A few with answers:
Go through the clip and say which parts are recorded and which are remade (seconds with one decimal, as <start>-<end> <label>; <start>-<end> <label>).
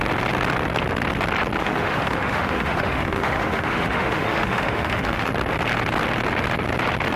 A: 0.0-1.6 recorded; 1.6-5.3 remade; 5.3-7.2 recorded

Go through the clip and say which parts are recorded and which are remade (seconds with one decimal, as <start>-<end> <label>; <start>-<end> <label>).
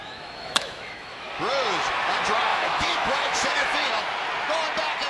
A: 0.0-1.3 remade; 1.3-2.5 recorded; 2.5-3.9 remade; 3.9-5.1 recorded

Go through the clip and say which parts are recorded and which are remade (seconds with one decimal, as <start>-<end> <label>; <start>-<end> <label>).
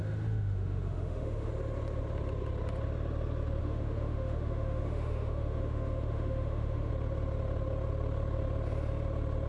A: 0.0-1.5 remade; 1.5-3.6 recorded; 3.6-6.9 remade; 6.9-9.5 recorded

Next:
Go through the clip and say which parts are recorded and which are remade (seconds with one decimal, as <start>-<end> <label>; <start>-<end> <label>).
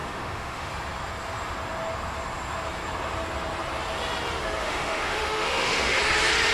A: 0.0-0.7 remade; 0.7-4.6 recorded; 4.6-6.0 remade; 6.0-6.5 recorded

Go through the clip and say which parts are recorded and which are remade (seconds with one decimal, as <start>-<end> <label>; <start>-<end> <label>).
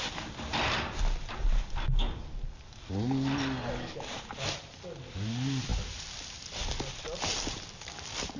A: 0.0-8.4 recorded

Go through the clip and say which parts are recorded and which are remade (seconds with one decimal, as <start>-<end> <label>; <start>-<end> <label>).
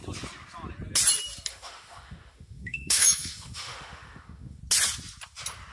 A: 0.0-1.5 recorded; 1.5-4.6 remade; 4.6-5.7 recorded